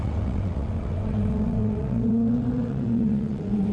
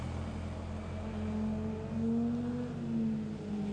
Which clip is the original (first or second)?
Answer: second